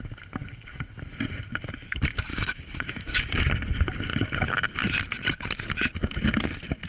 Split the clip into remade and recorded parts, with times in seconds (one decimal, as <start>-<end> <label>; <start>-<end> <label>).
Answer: 0.0-2.3 recorded; 2.3-3.4 remade; 3.4-6.9 recorded